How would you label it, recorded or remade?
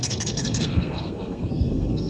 remade